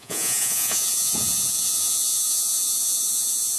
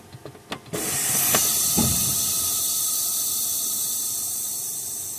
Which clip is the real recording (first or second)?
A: second